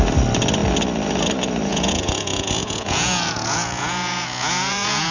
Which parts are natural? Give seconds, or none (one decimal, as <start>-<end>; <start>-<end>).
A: 0.0-1.7

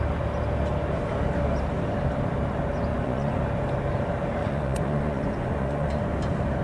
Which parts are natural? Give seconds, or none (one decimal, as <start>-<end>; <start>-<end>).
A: 0.0-2.9; 3.4-4.4; 6.0-6.6

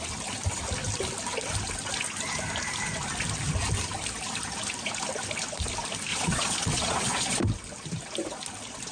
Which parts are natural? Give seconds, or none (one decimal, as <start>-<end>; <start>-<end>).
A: 0.0-6.1; 7.4-8.9

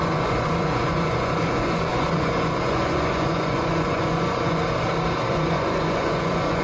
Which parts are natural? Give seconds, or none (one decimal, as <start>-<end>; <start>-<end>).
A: 4.6-5.3

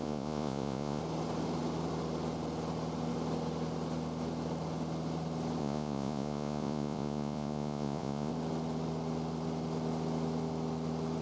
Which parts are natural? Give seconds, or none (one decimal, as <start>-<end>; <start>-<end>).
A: 1.0-5.6; 8.3-11.2

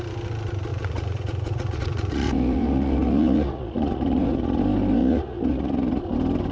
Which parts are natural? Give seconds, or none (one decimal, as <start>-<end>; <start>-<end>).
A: 0.0-0.7; 4.6-5.0; 6.0-6.5